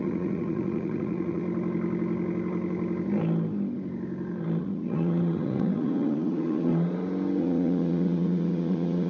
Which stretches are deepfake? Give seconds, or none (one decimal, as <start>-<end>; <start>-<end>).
0.0-1.4; 4.6-6.7; 7.4-9.1